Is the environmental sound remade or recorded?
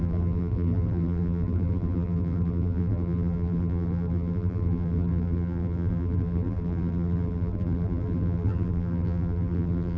remade